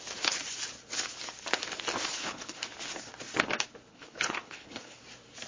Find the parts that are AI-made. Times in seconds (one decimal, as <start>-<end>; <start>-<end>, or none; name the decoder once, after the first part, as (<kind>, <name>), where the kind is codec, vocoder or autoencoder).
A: 2.1-2.6 (codec, HILCodec); 3.9-5.0